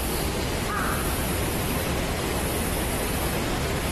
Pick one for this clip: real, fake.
real